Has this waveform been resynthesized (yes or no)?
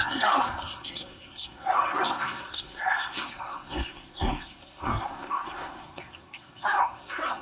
yes